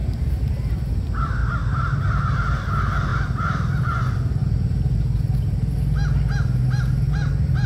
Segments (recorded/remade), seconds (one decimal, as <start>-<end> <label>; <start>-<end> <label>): 0.0-0.5 remade; 0.5-7.7 recorded